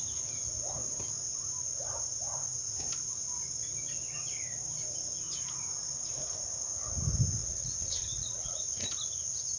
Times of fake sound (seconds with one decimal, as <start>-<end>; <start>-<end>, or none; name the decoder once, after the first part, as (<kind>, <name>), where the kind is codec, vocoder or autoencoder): 7.4-8.6 (vocoder, WaveNeXt)